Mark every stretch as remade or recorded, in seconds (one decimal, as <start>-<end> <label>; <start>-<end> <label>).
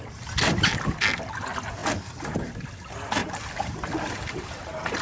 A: 0.0-3.2 recorded; 3.2-5.0 remade